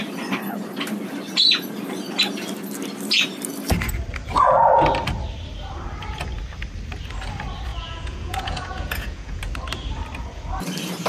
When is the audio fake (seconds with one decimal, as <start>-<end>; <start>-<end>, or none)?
7.7-9.4